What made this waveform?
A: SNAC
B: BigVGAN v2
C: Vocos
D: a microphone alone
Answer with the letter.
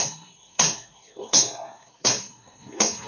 A